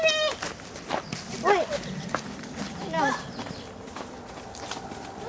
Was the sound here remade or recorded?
recorded